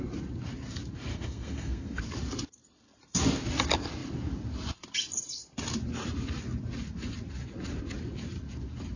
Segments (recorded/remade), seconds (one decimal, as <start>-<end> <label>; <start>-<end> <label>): 0.0-1.1 recorded; 1.1-2.0 remade; 2.0-9.0 recorded